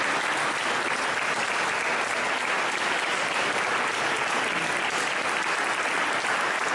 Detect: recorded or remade recorded